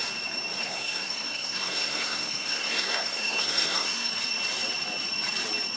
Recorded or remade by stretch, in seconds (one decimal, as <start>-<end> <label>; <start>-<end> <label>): 0.0-0.6 recorded; 0.6-4.1 remade; 4.1-5.8 recorded